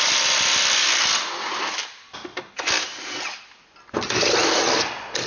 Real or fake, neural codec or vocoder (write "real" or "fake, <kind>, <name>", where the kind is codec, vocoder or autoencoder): real